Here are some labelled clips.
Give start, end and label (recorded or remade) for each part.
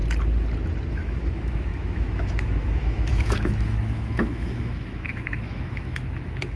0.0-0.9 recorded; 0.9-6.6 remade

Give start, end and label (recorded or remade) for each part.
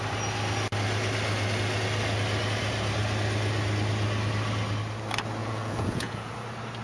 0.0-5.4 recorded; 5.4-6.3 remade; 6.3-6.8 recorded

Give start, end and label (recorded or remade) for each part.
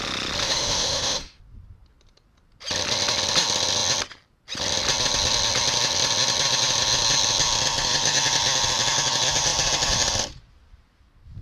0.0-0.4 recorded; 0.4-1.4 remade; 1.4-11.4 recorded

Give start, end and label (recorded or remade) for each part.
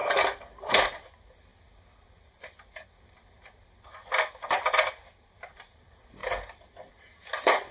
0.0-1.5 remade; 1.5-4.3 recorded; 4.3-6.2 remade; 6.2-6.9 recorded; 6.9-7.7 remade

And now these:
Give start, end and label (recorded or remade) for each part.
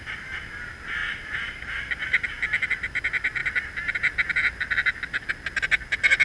0.0-6.2 recorded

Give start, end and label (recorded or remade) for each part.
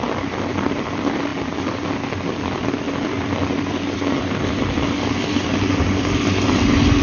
0.0-7.0 remade